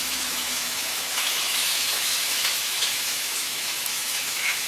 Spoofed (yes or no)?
yes